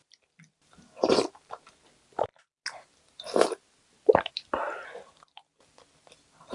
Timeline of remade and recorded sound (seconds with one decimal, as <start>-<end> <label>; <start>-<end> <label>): 0.0-6.5 recorded